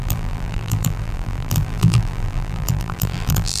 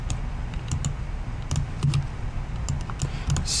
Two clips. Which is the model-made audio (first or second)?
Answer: first